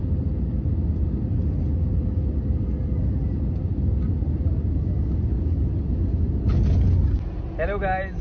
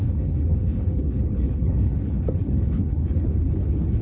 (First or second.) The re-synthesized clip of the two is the second